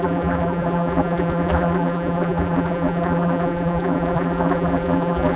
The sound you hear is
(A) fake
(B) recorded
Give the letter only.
A